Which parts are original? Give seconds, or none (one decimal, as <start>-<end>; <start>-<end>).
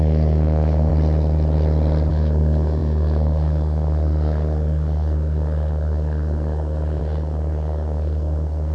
0.9-2.1